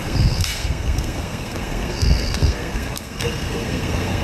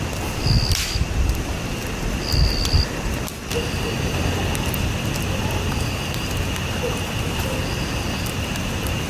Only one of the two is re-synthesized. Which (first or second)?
first